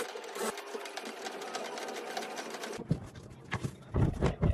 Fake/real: real